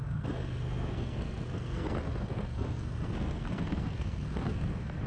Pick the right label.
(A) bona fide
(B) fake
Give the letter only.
B